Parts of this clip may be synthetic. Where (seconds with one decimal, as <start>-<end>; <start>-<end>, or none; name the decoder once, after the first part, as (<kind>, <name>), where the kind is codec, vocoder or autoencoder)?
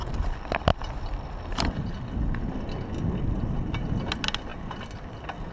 none